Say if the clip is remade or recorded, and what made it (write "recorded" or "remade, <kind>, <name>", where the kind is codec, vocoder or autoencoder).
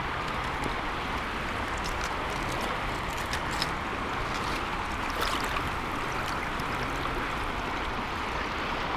recorded